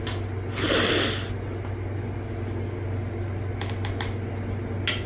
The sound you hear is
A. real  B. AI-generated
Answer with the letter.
A